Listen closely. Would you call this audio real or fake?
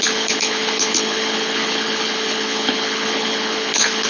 fake